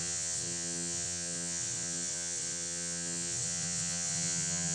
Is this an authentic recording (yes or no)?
no